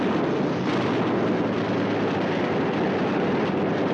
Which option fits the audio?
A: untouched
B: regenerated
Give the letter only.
A